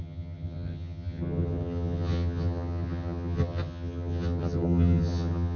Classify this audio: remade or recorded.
remade